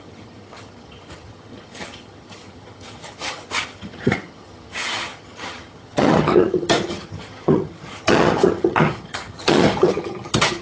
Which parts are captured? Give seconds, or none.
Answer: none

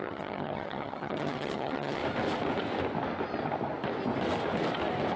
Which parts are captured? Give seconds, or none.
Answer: 2.0-5.2

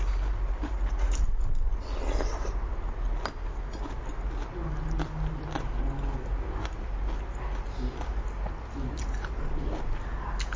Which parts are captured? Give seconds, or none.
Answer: 0.0-10.6

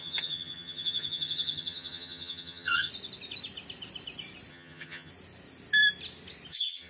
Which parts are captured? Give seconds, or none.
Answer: 2.9-4.5; 5.1-6.5